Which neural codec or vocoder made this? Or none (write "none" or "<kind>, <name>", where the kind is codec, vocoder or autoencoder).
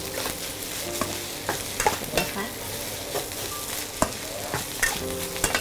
none